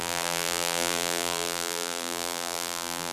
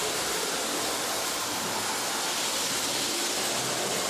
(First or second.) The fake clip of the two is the first